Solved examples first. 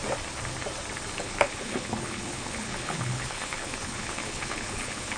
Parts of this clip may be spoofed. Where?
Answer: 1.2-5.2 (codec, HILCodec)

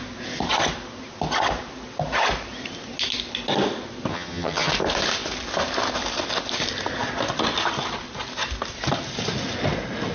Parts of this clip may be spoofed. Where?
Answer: 4.1-4.7 (vocoder, HiFi-GAN)

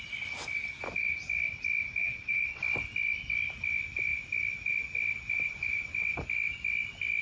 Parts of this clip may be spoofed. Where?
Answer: 2.0-2.6 (vocoder, Vocos)